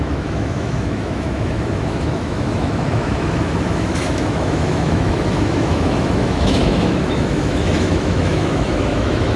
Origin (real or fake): fake